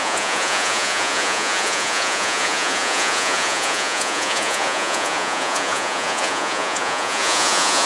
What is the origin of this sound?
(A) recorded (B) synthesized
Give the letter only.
B